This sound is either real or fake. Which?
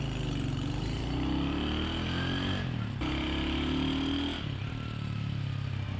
real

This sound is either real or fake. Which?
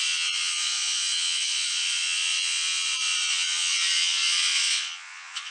fake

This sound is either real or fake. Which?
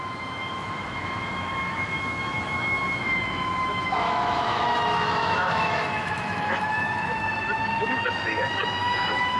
fake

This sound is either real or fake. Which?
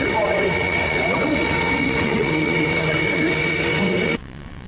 fake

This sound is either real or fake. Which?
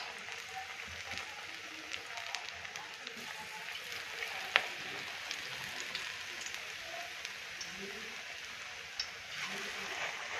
real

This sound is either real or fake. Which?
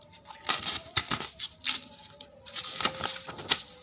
real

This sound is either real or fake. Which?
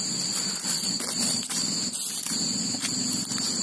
real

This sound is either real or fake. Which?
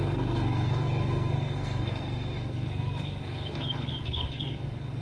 fake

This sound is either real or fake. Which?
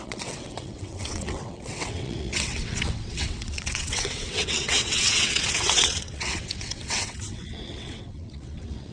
fake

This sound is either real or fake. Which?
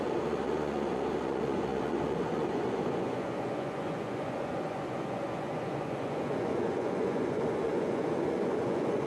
fake